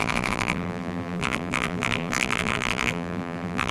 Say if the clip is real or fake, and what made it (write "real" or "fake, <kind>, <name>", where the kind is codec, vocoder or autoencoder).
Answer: fake, vocoder, BigVGAN v2